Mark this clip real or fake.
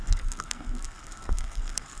fake